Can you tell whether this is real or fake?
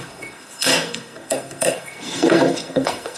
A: fake